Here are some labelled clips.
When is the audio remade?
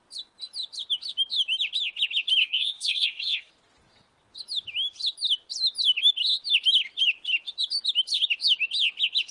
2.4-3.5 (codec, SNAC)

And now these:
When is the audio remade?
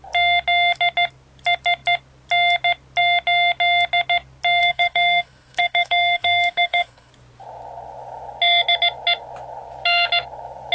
4.6-7.1 (codec, SNAC)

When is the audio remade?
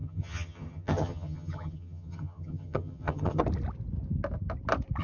0.0-3.4 (vocoder, HiFi-GAN)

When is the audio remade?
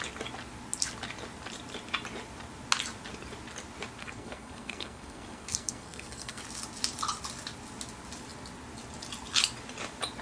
4.0-6.4 (codec, SNAC)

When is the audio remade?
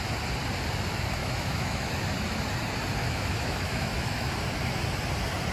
1.2-1.9 (autoencoder, DAC-VAE); 3.0-4.3